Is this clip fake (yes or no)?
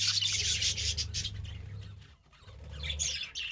no